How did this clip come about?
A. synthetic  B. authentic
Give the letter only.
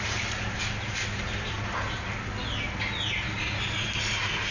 B